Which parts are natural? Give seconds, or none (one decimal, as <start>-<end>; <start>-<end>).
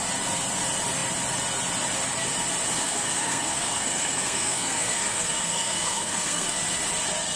0.0-2.8; 6.6-7.4